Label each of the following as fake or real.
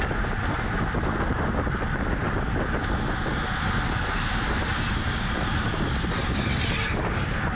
real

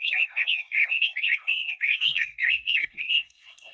fake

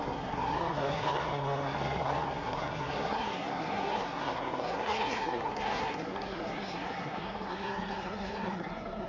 fake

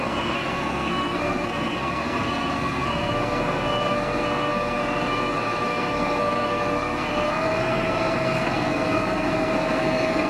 fake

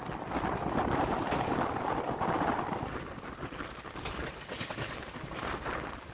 real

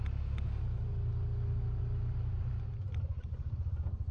real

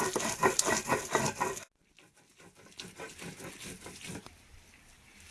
real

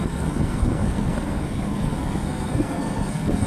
fake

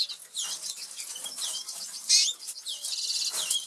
real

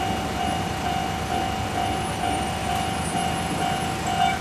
real